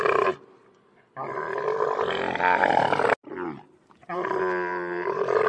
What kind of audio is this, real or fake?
real